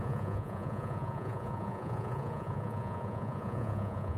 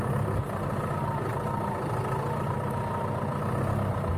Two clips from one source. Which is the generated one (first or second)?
first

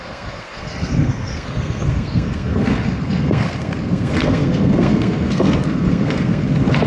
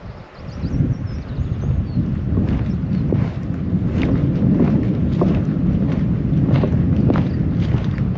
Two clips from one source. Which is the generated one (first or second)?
first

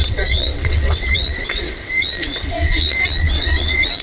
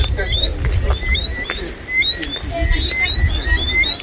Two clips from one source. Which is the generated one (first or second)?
first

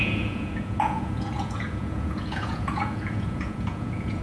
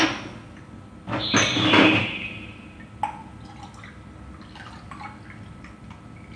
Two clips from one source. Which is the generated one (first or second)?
first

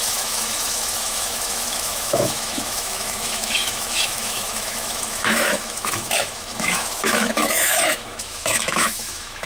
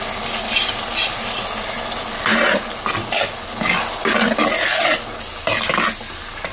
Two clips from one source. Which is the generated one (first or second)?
first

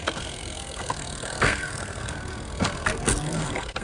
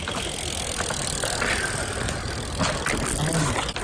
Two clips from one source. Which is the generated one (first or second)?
first